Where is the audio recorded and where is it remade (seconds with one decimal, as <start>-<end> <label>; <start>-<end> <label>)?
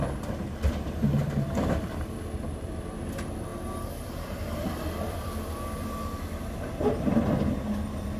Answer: 0.0-3.5 remade; 3.5-4.1 recorded; 4.1-8.2 remade